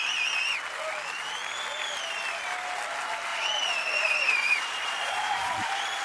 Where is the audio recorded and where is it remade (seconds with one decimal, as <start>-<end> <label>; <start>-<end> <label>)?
0.0-3.3 recorded; 3.3-6.0 remade